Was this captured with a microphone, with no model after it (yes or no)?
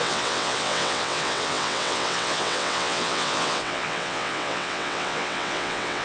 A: no